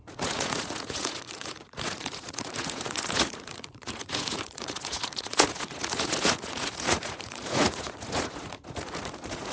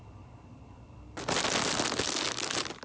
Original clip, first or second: second